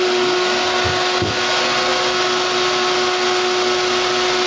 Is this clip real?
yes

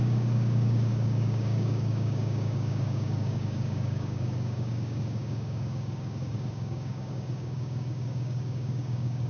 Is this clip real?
no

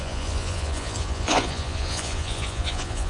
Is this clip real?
no